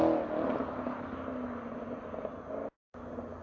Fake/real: real